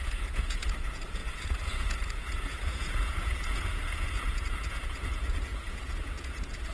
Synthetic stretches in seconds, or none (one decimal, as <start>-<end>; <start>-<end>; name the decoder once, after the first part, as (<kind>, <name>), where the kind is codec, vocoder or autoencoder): 0.0-6.7 (vocoder, Vocos)